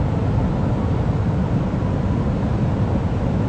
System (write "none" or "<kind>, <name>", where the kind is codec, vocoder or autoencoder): none